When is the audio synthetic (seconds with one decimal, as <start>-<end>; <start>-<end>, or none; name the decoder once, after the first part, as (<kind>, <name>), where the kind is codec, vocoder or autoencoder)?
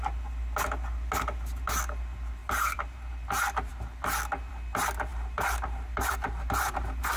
2.4-3.1 (vocoder, BigVGAN v2); 5.1-7.2